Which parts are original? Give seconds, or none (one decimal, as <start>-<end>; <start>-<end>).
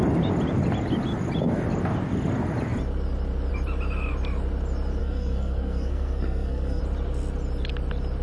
0.0-5.0; 6.8-8.2